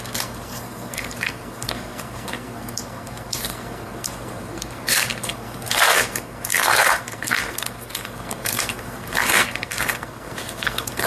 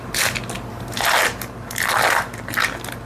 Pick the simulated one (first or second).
first